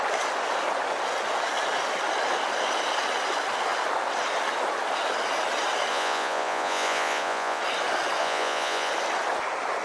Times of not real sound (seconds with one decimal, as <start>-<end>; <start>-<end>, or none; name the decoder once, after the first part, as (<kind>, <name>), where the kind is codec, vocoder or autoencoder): 5.9-7.6 (vocoder, Vocos); 8.2-8.9